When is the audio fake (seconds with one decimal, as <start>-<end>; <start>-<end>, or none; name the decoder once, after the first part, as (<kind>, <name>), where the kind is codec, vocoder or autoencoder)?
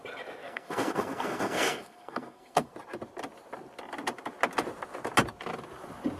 0.4-2.7 (codec, SNAC)